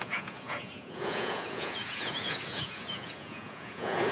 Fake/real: fake